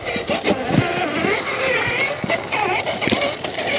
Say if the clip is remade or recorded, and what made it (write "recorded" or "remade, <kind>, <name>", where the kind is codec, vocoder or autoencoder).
recorded